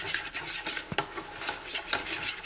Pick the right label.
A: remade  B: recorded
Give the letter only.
B